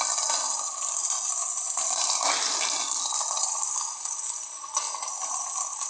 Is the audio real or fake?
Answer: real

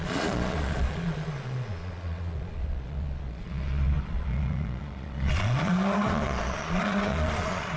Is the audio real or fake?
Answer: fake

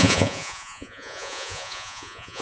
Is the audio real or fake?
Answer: fake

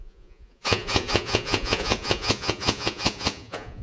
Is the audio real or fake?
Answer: fake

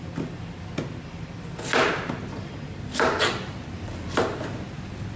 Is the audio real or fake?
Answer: real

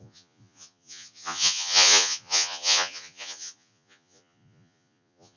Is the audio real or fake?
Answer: fake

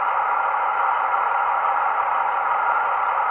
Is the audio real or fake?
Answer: real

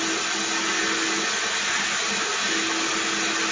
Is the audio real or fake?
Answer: real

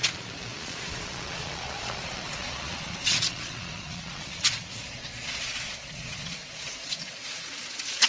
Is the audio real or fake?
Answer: fake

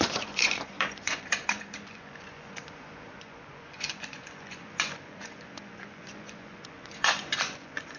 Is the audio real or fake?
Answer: fake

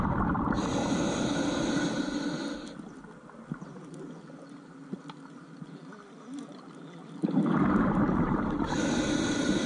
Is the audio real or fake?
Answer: real